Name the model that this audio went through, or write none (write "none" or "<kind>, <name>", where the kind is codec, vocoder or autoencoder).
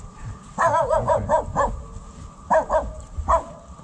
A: none